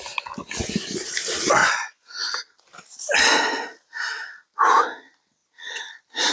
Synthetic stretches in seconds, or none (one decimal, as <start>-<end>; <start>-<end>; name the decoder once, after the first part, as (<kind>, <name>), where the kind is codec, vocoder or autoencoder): 1.6-2.2 (vocoder, Vocos)